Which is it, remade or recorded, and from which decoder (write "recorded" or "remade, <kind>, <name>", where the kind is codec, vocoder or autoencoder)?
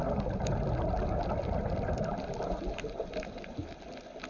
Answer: recorded